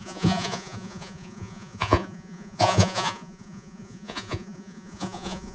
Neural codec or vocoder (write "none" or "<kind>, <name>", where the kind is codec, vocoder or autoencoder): vocoder, Vocos